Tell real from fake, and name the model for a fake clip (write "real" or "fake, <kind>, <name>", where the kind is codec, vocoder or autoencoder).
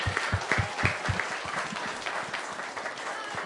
real